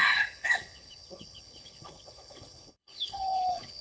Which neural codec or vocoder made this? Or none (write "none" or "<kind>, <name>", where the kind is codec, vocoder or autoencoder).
codec, HILCodec